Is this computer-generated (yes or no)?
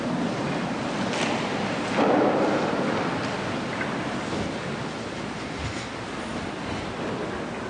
no